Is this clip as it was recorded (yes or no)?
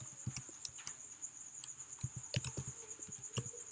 yes